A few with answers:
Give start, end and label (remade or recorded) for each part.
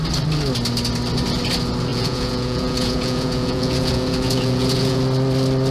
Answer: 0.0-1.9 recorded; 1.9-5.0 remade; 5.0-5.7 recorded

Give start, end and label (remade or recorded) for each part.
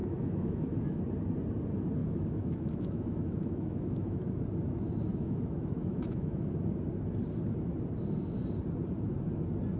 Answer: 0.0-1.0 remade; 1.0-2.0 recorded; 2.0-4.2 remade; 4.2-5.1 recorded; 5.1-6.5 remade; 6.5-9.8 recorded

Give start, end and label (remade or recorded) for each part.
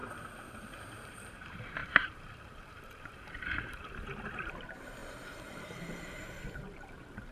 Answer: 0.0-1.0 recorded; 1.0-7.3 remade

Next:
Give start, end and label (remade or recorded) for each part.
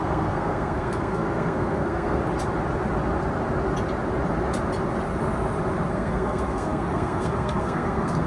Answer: 0.0-2.2 remade; 2.2-5.9 recorded; 5.9-8.3 remade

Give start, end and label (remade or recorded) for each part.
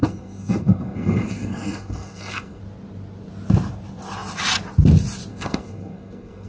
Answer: 0.0-2.6 remade; 2.6-5.3 recorded; 5.3-6.5 remade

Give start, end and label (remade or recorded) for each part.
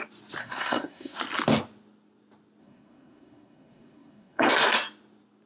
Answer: 0.0-0.4 recorded; 0.4-1.2 remade; 1.2-2.6 recorded; 2.6-4.5 remade; 4.5-5.5 recorded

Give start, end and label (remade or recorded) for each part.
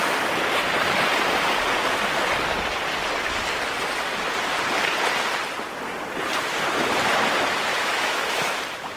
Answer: 0.0-7.7 recorded; 7.7-8.6 remade; 8.6-9.0 recorded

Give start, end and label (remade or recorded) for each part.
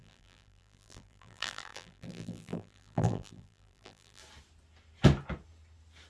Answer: 0.0-4.2 remade; 4.2-6.1 recorded